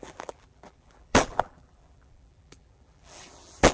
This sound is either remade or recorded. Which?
remade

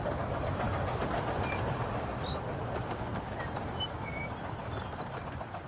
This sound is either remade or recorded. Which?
recorded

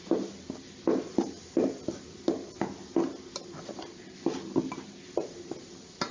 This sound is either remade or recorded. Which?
recorded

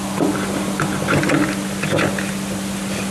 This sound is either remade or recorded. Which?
recorded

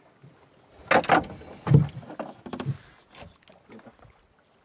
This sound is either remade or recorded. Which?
recorded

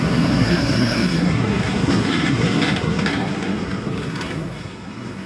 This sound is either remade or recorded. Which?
remade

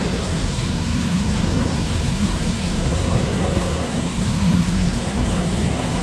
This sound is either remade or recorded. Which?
remade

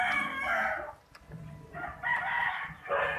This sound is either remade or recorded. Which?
recorded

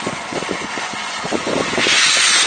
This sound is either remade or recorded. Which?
remade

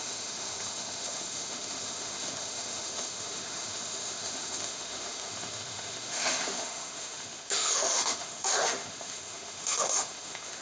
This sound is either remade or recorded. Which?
remade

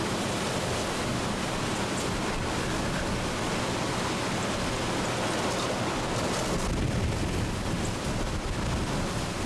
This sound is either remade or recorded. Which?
recorded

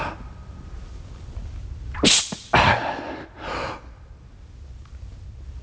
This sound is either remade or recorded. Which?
recorded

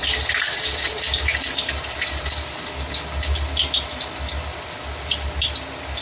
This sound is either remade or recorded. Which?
recorded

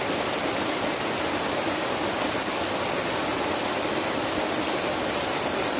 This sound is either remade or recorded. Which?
recorded